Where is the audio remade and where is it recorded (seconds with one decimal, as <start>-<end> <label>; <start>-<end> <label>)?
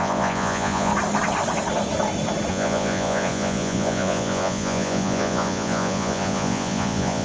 0.0-0.9 remade; 0.9-2.5 recorded; 2.5-7.2 remade